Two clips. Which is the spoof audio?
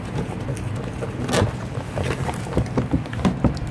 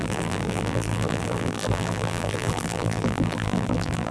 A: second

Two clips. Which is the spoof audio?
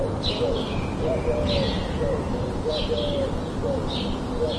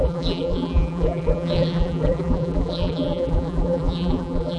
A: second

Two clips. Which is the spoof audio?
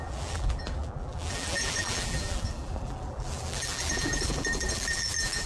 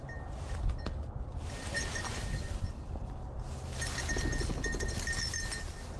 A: first